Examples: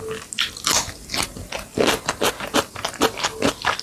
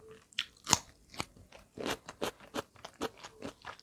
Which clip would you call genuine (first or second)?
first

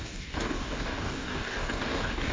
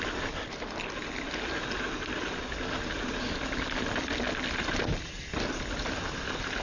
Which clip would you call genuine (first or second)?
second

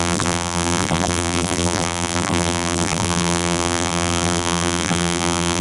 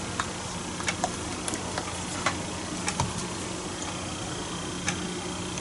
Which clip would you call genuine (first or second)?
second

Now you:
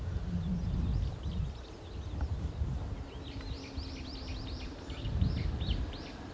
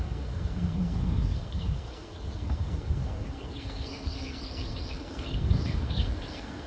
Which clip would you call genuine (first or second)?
first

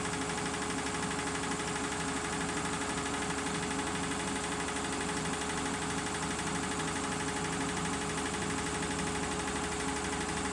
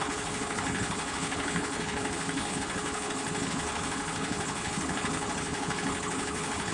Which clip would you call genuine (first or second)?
first